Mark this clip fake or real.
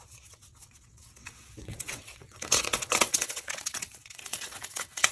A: fake